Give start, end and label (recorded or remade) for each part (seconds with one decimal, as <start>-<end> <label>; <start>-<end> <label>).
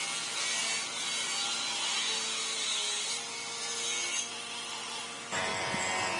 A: 0.0-6.2 recorded